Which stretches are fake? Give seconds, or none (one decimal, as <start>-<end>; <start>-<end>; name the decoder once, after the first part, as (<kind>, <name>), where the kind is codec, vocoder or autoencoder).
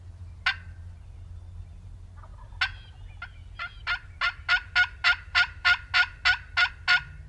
none